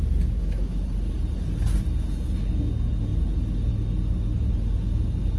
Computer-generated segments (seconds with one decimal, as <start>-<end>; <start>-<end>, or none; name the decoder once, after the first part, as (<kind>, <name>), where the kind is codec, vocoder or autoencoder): 0.4-1.1 (autoencoder, DAC-VAE)